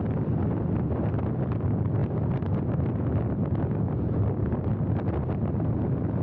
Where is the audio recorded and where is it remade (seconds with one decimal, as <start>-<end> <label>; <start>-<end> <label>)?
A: 0.0-6.2 recorded